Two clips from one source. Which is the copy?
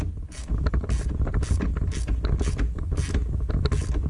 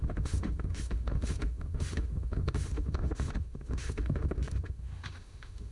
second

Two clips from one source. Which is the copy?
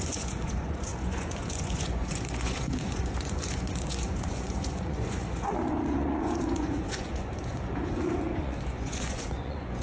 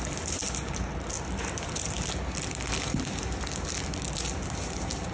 first